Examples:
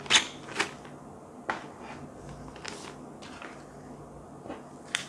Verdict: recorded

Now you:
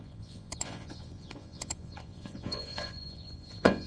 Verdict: remade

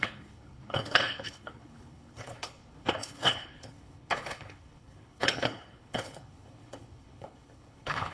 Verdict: remade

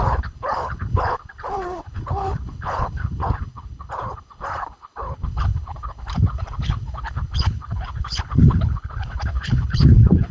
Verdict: remade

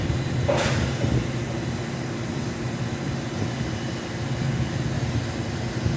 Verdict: recorded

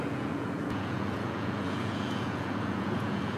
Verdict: remade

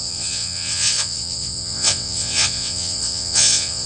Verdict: remade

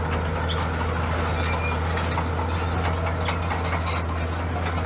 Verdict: recorded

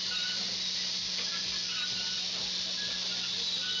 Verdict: recorded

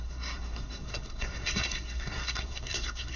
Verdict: remade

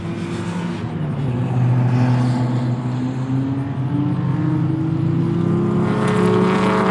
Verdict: recorded